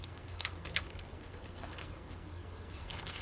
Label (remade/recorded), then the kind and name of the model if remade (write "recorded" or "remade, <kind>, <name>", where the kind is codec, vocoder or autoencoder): remade, codec, SNAC